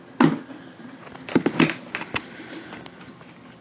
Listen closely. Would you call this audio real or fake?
real